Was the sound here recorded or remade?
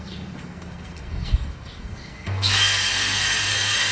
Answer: remade